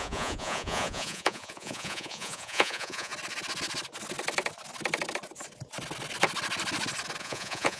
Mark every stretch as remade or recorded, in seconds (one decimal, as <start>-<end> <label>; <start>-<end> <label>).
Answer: 0.0-3.1 remade; 3.1-7.2 recorded; 7.2-7.8 remade